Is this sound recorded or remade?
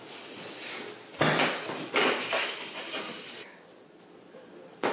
recorded